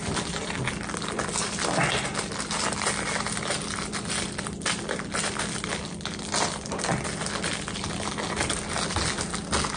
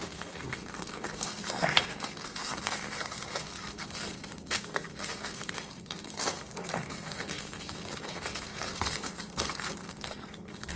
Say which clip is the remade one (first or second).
second